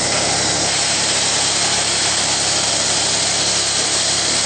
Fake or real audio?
real